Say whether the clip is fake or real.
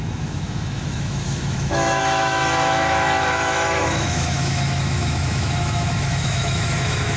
fake